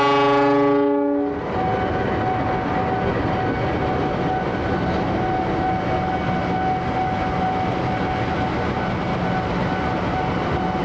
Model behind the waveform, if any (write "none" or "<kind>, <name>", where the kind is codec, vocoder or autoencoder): none